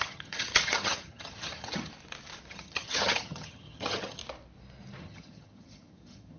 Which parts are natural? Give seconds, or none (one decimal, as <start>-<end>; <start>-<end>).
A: 1.9-2.5; 4.2-5.0